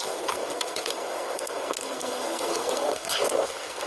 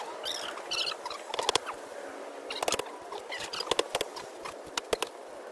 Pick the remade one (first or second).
first